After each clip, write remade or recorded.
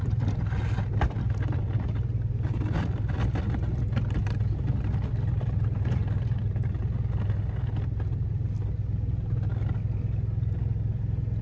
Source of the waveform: recorded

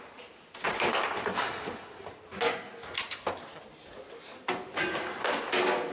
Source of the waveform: recorded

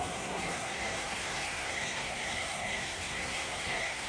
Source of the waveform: remade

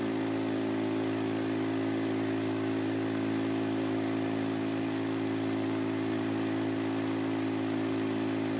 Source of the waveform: recorded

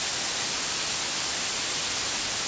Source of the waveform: recorded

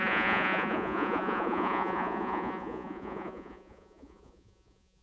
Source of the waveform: remade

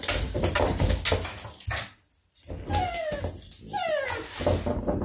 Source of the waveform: recorded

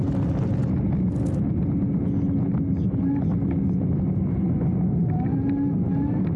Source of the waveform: recorded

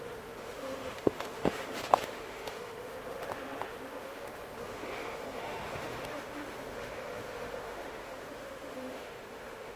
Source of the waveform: remade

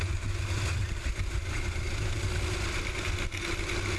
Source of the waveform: recorded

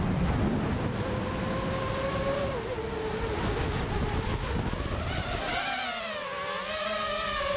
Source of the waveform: recorded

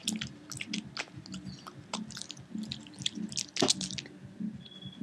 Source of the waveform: recorded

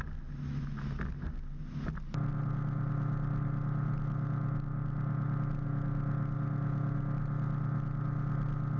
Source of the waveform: recorded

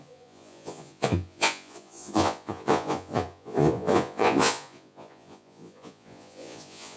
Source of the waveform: remade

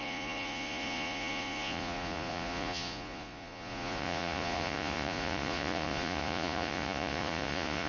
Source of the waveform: remade